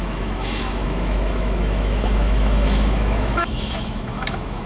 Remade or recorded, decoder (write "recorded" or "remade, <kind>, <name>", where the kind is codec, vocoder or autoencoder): remade, autoencoder, DAC-VAE